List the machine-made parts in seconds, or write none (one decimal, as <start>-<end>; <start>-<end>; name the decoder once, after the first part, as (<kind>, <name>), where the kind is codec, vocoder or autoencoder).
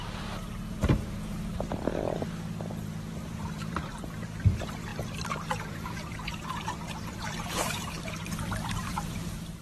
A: 0.0-9.6 (vocoder, BigVGAN v2)